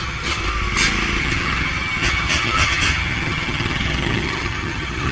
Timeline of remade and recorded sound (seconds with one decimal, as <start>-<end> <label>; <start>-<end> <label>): 0.0-0.4 remade; 0.4-1.2 recorded; 1.2-5.1 remade